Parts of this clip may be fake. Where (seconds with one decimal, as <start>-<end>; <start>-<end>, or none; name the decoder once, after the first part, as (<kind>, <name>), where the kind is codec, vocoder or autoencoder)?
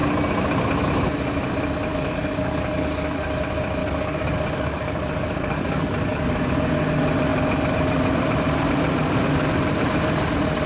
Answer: 1.9-3.2 (codec, DAC); 3.8-6.4